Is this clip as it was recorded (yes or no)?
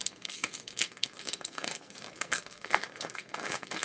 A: no